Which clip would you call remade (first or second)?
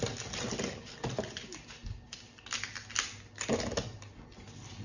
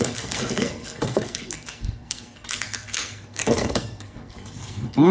second